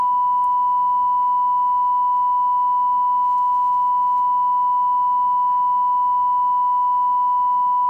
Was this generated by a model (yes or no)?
no